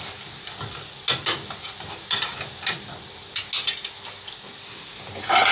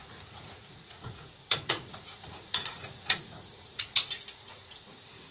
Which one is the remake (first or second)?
second